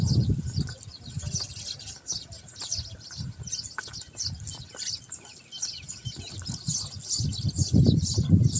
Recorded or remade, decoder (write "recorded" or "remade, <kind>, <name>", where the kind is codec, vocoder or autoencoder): recorded